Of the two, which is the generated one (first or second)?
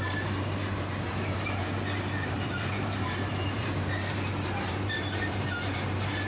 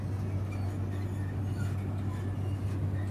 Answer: first